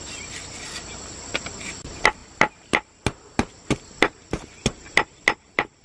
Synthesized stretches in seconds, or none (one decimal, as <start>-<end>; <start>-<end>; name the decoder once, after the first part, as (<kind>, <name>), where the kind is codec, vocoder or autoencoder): none